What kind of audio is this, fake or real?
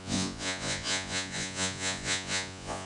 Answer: fake